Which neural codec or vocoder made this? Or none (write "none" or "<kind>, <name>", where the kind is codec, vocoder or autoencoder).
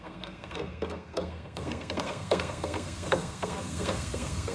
codec, SNAC